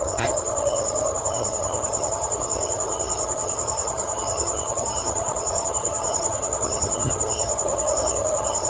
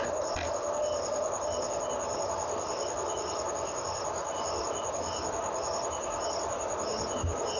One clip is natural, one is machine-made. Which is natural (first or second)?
second